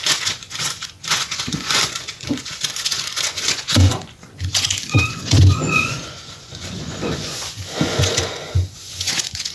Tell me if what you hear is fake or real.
fake